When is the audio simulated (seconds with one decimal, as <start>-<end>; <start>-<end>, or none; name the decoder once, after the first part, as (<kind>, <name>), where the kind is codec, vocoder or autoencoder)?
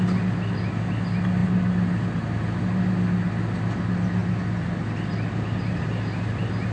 none